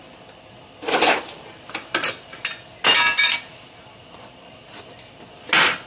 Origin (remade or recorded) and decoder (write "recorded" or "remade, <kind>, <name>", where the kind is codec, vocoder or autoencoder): recorded